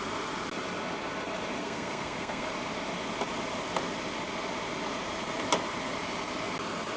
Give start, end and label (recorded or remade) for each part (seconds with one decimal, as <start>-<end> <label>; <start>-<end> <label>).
0.0-1.6 recorded; 1.6-2.5 remade; 2.5-7.0 recorded